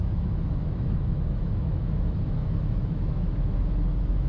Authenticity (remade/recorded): remade